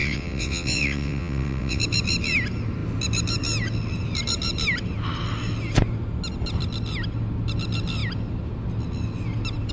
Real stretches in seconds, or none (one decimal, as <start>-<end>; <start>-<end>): 1.8-9.7

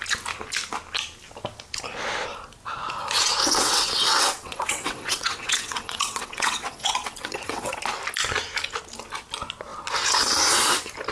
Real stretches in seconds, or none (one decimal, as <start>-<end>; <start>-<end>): 0.0-3.4; 7.8-11.1

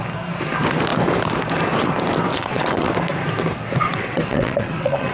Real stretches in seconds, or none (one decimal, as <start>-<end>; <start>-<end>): 0.0-2.3; 2.9-3.9

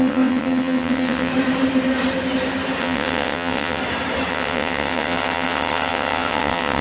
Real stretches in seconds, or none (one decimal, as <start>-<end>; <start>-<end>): 1.3-2.8; 3.8-4.3